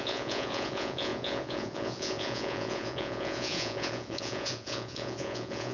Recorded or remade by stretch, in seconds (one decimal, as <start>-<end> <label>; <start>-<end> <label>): 0.0-5.7 remade